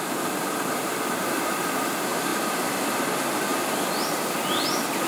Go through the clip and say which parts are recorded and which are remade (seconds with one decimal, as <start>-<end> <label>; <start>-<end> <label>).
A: 0.0-1.2 recorded; 1.2-1.8 remade; 1.8-2.3 recorded; 2.3-3.0 remade; 3.0-5.1 recorded